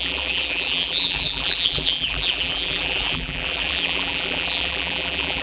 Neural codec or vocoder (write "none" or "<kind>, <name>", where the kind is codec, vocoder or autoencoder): vocoder, BigVGAN v2